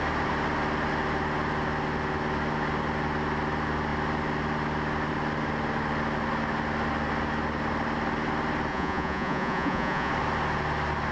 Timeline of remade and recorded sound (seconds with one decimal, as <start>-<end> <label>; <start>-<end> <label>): 0.0-8.7 recorded; 8.7-10.1 remade; 10.1-11.1 recorded